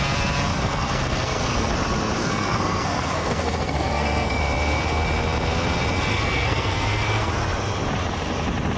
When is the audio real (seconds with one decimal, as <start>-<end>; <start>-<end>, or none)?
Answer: 0.0-0.5; 1.7-2.2; 4.4-6.1; 7.3-8.8